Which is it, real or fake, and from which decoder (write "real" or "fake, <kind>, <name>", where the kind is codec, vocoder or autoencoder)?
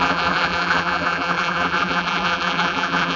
fake, vocoder, BigVGAN v2